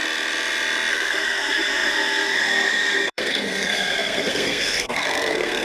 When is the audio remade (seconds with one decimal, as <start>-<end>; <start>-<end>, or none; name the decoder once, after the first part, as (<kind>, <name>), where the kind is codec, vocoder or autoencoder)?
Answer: 0.9-5.6 (codec, SNAC)